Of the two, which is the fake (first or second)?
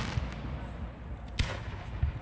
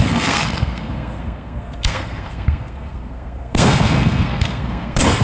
second